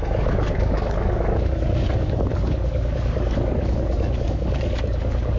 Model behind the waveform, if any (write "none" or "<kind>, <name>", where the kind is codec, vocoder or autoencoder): codec, DAC